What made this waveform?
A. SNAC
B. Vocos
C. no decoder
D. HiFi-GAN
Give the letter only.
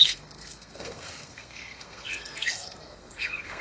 A